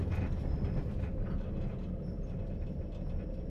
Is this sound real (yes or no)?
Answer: yes